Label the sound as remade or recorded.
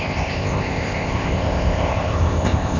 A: remade